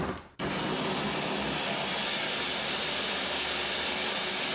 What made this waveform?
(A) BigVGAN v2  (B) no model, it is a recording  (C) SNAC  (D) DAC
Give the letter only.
B